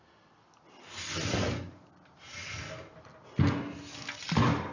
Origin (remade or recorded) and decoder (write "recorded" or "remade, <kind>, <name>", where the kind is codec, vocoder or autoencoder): recorded